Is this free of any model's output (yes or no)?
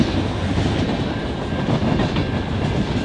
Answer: yes